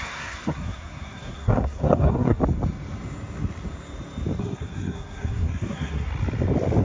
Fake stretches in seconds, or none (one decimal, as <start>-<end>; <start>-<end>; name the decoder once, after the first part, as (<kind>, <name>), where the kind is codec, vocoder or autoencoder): 0.0-2.4 (codec, SNAC); 4.4-6.1